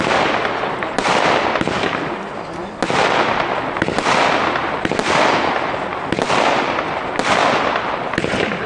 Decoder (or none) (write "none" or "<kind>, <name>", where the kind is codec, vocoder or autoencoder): none